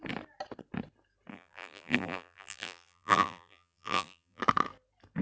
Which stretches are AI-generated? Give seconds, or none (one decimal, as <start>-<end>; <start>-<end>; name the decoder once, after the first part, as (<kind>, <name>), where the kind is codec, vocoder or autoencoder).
1.3-4.4 (vocoder, BigVGAN v2)